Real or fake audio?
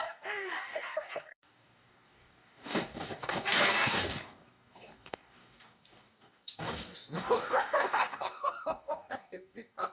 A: fake